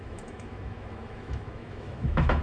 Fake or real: fake